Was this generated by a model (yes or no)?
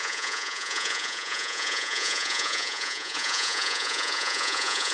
yes